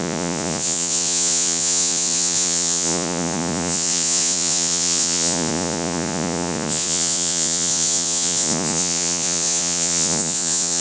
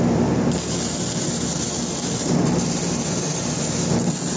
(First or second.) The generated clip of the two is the first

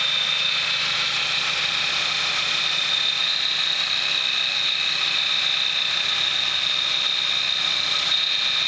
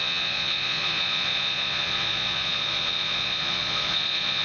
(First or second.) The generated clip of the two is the second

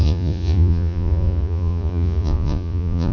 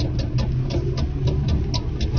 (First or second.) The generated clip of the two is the first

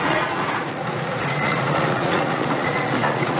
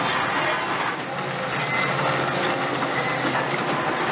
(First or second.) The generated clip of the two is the first